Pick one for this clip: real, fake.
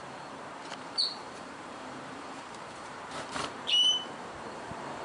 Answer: fake